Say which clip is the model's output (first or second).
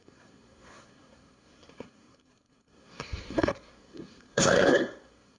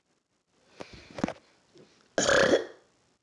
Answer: first